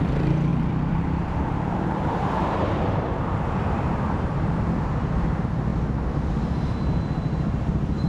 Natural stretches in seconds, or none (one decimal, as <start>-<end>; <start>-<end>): 5.7-6.7